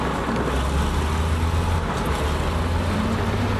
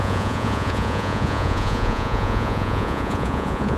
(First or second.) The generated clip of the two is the second